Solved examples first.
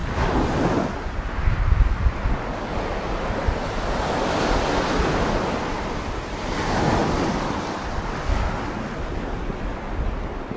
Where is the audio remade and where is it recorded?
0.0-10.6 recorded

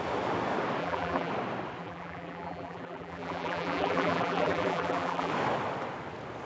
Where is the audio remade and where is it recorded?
0.0-0.8 recorded; 0.8-1.3 remade; 1.3-1.8 recorded; 1.8-5.3 remade; 5.3-6.5 recorded

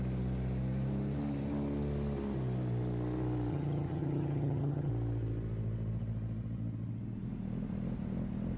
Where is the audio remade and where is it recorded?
0.0-3.5 recorded; 3.5-4.9 remade; 4.9-8.6 recorded

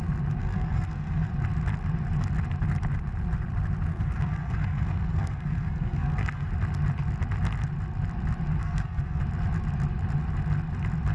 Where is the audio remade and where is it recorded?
0.0-0.4 recorded; 0.4-1.3 remade; 1.3-3.9 recorded; 3.9-6.5 remade; 6.5-8.6 recorded; 8.6-9.2 remade; 9.2-11.1 recorded